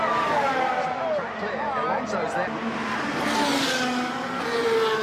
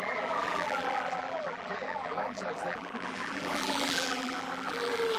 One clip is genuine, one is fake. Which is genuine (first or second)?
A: first